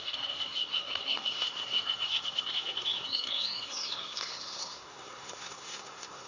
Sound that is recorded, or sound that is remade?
remade